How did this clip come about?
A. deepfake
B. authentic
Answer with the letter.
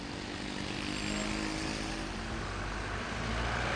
B